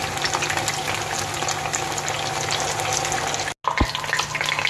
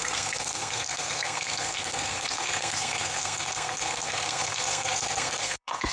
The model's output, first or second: second